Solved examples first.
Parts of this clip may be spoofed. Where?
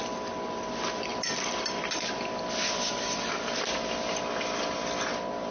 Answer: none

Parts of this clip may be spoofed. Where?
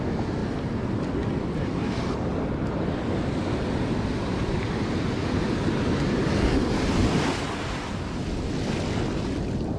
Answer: none